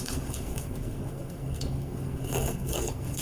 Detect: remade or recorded remade